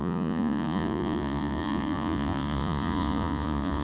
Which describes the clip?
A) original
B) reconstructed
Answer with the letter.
B